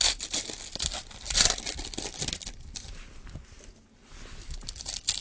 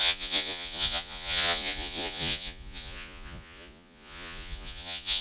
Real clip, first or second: first